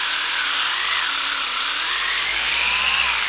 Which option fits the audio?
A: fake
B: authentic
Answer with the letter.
B